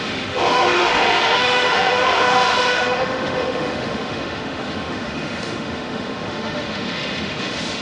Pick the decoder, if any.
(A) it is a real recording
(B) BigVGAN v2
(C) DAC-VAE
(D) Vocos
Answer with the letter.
C